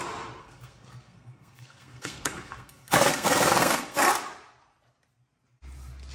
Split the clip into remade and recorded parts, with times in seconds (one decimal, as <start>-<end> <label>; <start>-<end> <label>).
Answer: 0.0-0.4 recorded; 0.4-4.1 remade; 4.1-6.1 recorded